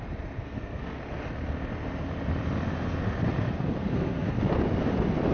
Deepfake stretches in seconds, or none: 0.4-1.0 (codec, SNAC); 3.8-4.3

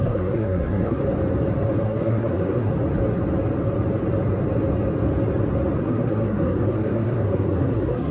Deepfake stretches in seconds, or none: 0.0-1.0 (codec, SNAC); 1.8-2.7; 5.8-8.1

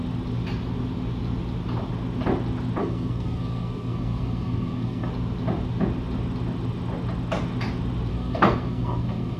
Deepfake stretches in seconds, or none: 2.8-5.1 (codec, SNAC); 8.1-9.4

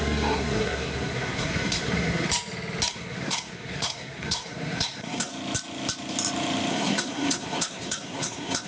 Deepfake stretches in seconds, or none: 0.0-2.3 (codec, SNAC); 2.9-5.3; 6.7-8.7